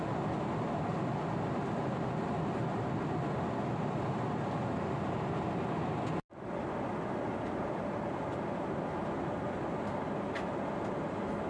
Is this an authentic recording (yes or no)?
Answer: yes